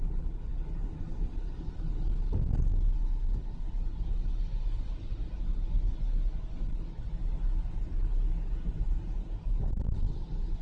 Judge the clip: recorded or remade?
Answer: recorded